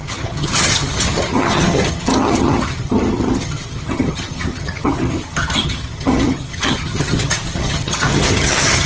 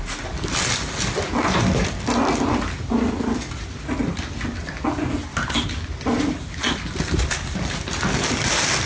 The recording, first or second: second